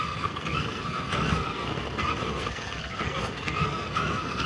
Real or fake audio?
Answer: fake